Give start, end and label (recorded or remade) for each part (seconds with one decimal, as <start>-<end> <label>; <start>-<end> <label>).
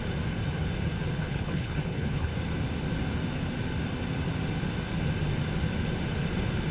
0.0-1.1 recorded; 1.1-2.3 remade; 2.3-6.7 recorded